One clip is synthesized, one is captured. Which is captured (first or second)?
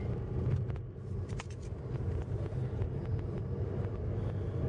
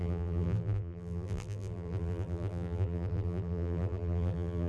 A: first